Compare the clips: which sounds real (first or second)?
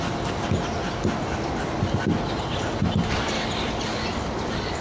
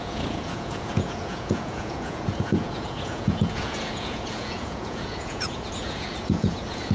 first